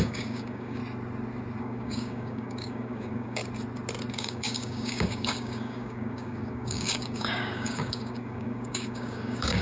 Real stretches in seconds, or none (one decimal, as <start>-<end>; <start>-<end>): 0.8-1.6; 3.4-4.1